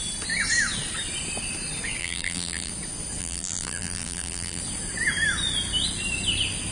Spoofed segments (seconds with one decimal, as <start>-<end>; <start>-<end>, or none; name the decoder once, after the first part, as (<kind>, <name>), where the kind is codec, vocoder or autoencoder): 2.0-2.7 (vocoder, BigVGAN v2); 3.2-4.6